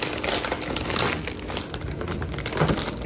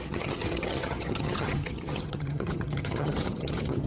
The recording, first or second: first